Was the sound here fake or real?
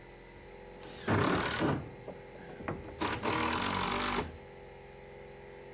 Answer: real